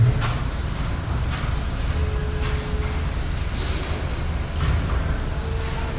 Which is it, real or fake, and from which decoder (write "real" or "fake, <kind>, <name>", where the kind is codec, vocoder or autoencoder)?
real